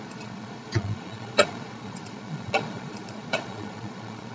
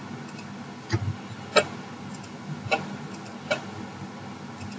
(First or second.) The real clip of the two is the second